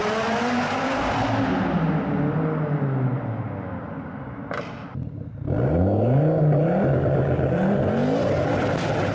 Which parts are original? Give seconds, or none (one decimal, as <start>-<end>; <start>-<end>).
0.0-9.1